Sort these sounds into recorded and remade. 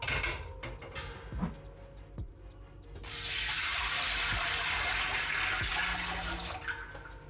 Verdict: recorded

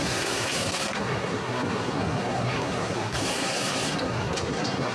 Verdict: remade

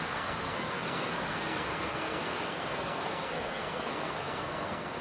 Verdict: remade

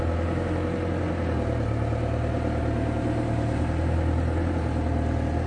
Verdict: recorded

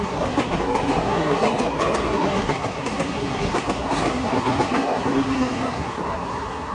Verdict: remade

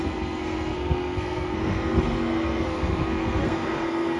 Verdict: remade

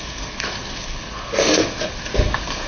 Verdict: remade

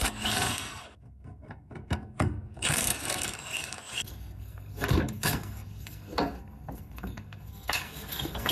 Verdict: remade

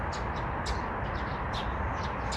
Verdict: recorded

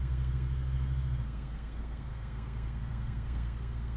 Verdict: remade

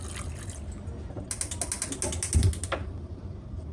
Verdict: recorded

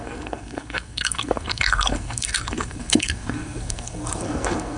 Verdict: remade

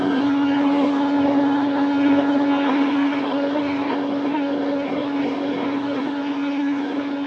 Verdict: remade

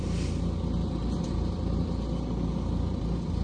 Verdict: recorded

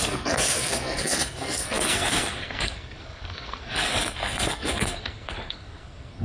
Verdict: remade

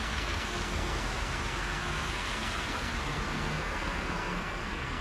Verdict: remade